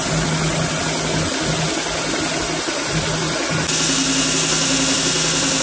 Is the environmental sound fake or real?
real